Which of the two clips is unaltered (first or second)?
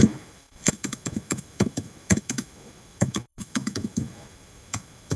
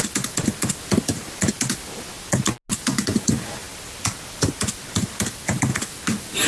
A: second